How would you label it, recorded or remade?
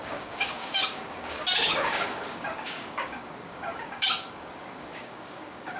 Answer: remade